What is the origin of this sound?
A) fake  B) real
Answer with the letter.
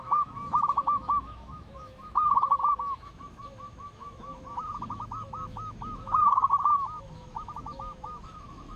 A